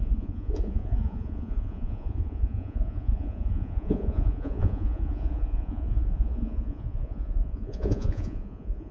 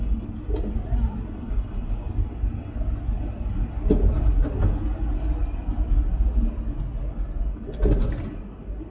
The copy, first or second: first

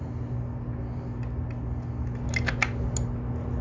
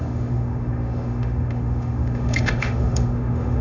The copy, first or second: second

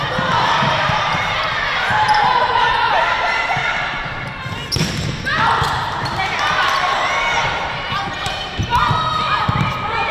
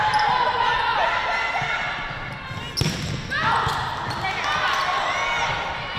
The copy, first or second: first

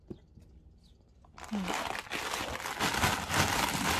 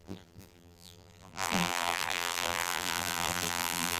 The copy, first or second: second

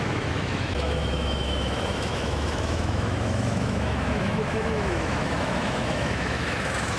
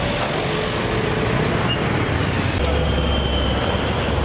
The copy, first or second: first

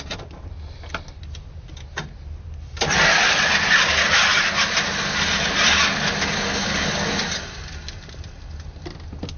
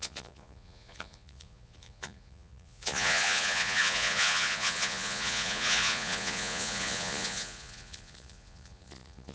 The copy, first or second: second